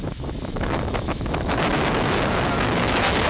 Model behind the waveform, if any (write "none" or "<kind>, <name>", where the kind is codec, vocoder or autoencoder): autoencoder, DAC-VAE